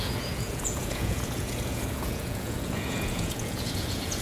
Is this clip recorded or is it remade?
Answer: remade